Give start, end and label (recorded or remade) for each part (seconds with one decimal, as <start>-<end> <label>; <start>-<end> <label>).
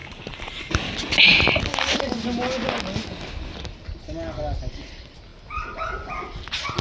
0.0-0.6 remade; 0.6-6.8 recorded